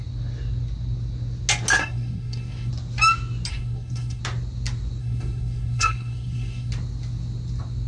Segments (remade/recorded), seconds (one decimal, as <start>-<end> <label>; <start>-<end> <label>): 0.0-1.8 recorded; 1.8-2.7 remade; 2.7-3.5 recorded; 3.5-4.2 remade; 4.2-5.0 recorded; 5.0-6.7 remade; 6.7-7.9 recorded